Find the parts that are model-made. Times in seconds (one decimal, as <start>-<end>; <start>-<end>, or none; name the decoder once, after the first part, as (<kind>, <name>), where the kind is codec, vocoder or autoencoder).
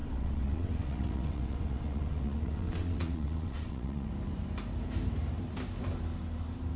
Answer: 0.0-4.1 (vocoder, WaveNeXt)